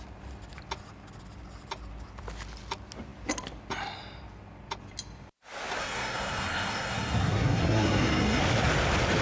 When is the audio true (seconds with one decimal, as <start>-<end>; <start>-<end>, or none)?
0.0-5.8; 8.4-9.2